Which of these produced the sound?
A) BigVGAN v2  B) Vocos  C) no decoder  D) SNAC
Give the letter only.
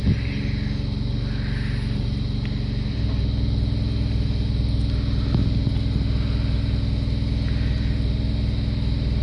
C